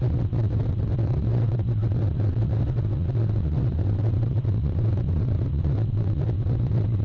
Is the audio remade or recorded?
remade